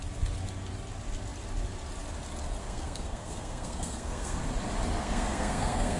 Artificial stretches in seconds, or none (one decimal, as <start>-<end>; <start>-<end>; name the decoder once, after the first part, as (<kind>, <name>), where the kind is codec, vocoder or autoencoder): 2.6-4.4 (codec, SNAC); 5.0-6.0